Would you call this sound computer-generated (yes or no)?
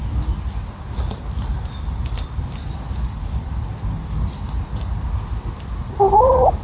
no